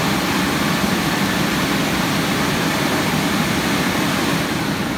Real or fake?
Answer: real